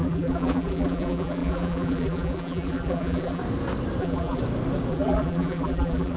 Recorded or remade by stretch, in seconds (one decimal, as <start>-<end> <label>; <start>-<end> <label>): 0.0-3.4 remade; 3.4-4.0 recorded; 4.0-4.4 remade; 4.4-4.9 recorded; 4.9-6.2 remade